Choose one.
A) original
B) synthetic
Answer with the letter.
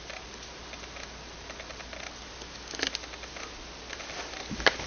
A